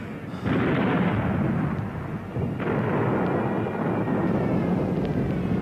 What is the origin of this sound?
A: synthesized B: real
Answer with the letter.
B